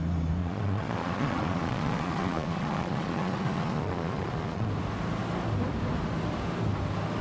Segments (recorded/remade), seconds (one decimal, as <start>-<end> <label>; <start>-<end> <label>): 0.0-0.4 recorded; 0.4-4.7 remade; 4.7-7.2 recorded